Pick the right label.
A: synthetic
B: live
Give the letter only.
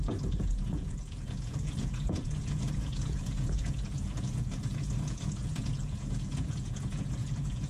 A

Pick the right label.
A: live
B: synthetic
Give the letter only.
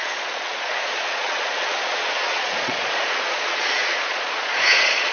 B